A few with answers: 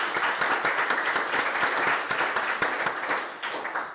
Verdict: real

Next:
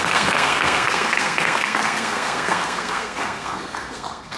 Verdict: fake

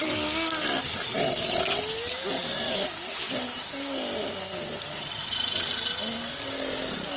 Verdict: real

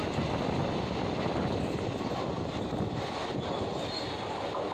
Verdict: real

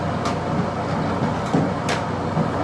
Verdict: real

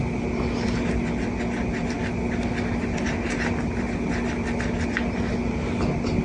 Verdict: real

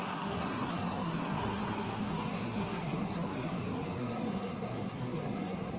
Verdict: fake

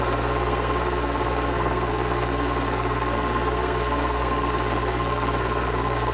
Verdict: fake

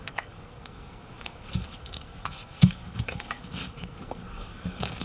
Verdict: fake